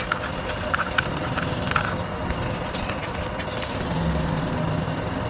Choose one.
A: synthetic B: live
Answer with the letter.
B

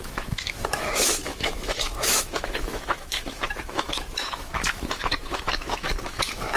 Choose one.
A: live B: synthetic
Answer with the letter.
B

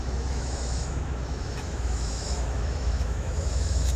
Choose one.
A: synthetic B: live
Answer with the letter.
A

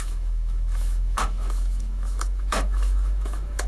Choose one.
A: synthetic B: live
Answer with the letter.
A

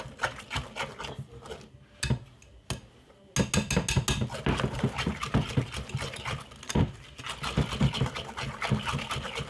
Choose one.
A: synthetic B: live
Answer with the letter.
B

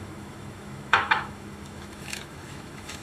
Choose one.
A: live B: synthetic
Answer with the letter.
B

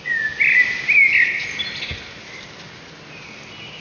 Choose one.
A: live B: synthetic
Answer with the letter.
A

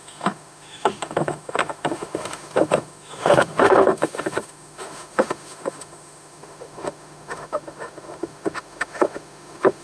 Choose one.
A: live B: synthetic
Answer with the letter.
B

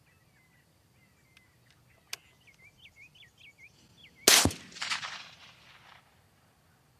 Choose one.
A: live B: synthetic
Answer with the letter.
A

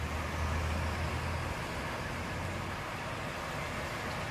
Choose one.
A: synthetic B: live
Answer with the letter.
B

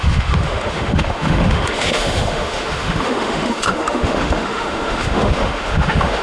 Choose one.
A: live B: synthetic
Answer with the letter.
B